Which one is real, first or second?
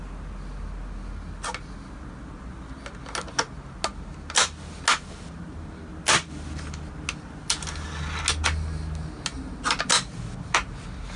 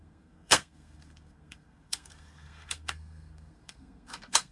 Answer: first